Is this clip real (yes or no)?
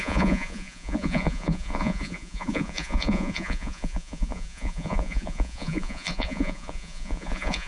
no